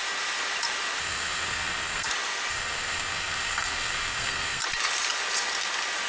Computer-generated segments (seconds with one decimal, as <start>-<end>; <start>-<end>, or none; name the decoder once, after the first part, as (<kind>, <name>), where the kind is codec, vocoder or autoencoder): 1.0-2.1 (codec, SNAC); 2.5-4.6